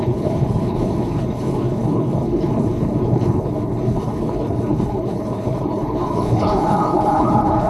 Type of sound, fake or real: fake